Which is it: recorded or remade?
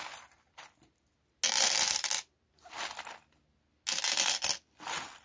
recorded